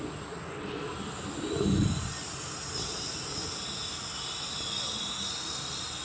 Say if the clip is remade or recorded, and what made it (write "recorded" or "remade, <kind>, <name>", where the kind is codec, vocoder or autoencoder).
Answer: recorded